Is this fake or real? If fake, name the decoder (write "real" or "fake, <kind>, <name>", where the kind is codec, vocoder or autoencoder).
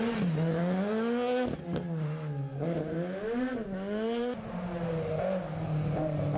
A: real